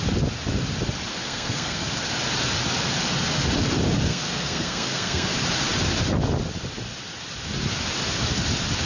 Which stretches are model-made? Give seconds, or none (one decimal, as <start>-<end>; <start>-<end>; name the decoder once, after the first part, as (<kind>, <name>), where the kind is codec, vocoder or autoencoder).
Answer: 1.1-1.9 (codec, SNAC); 4.1-5.3